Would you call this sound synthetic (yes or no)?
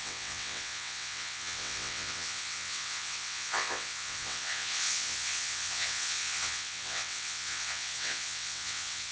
yes